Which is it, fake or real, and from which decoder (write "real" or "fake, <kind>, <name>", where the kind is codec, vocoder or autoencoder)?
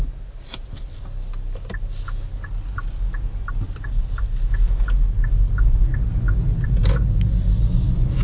real